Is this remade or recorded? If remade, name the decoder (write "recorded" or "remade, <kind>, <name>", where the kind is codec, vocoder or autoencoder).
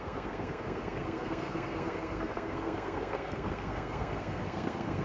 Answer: remade, codec, SNAC